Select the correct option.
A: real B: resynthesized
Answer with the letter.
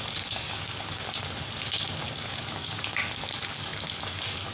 B